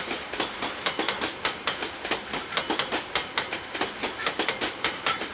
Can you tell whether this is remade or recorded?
recorded